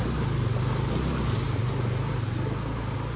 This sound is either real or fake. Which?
real